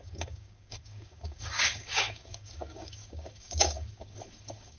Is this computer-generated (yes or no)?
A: yes